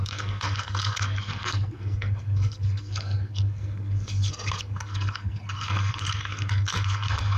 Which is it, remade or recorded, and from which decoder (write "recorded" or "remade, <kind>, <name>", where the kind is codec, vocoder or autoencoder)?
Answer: remade, codec, SNAC